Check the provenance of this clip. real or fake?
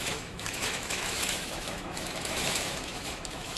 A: fake